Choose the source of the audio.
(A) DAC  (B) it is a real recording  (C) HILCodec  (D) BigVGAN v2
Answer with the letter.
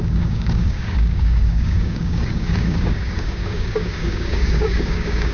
A